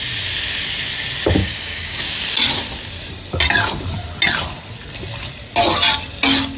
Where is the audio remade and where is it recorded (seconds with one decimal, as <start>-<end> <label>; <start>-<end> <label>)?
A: 0.0-1.4 recorded; 1.4-2.0 remade; 2.0-6.6 recorded